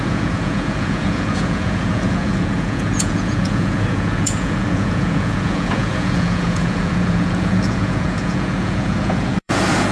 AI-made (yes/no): yes